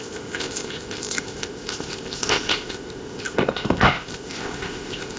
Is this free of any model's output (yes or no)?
no